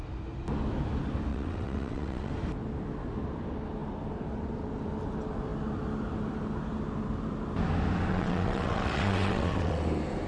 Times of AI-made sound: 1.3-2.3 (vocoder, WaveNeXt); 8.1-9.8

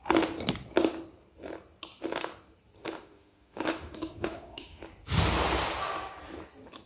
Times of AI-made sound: 2.8-4.8 (autoencoder, DAC-VAE)

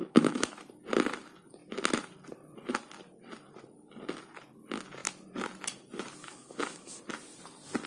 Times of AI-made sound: 0.0-0.6 (autoencoder, DAC-VAE); 6.2-7.0